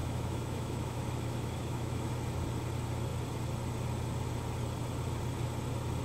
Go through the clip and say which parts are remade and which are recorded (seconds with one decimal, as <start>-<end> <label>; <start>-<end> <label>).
0.0-2.1 remade; 2.1-6.0 recorded

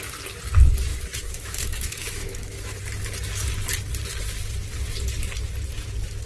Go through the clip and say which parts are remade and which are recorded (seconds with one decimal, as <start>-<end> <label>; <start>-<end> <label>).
0.0-0.9 recorded; 0.9-2.8 remade; 2.8-6.3 recorded

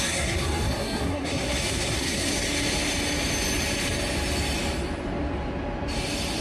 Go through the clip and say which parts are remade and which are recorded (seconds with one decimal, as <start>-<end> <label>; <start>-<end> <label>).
0.0-2.3 remade; 2.3-6.4 recorded

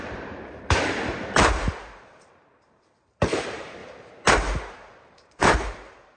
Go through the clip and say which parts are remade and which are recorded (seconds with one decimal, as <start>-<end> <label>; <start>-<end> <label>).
0.0-3.8 remade; 3.8-4.3 recorded; 4.3-6.2 remade

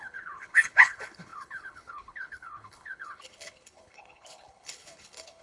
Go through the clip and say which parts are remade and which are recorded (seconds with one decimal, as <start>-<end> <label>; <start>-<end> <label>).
0.0-5.4 remade

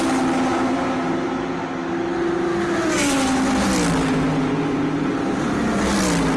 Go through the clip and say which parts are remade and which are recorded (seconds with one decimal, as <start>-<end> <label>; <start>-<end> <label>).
0.0-6.4 recorded

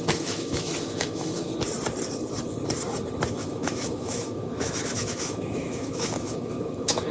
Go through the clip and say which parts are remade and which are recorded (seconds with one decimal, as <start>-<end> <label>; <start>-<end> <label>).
0.0-1.5 remade; 1.5-3.3 recorded; 3.3-7.1 remade